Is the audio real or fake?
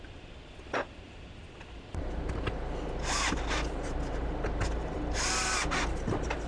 real